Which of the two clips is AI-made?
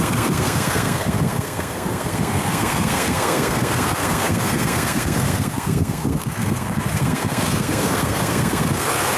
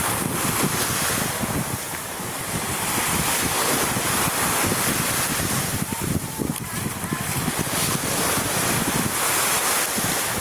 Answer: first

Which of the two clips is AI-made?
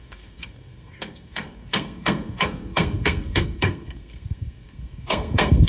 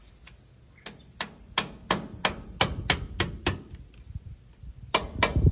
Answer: first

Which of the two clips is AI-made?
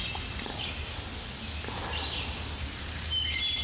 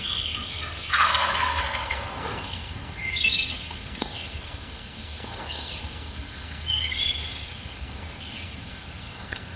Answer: second